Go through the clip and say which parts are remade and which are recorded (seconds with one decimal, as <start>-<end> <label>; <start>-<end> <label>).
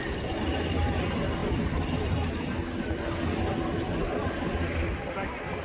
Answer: 0.0-5.6 recorded